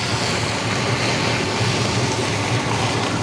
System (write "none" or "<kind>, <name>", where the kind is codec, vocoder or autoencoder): none